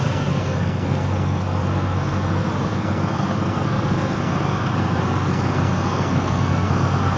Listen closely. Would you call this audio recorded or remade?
remade